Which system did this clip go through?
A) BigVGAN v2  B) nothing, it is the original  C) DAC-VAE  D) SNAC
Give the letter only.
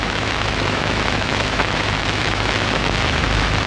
C